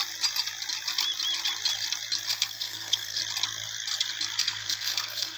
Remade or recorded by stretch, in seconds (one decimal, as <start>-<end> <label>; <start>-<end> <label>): 0.0-2.3 recorded; 2.3-3.2 remade; 3.2-4.4 recorded; 4.4-5.4 remade